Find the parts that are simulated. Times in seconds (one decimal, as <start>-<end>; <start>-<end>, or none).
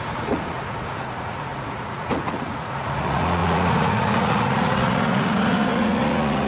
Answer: 0.0-6.5